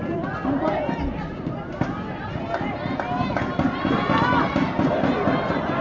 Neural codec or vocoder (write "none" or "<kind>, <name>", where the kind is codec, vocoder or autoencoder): none